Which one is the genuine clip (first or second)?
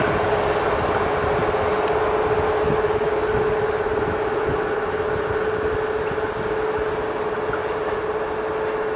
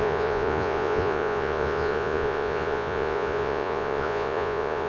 first